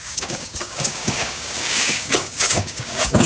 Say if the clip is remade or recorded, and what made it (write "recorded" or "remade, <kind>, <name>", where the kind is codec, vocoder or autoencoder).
remade, codec, DAC